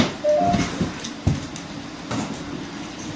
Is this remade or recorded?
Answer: recorded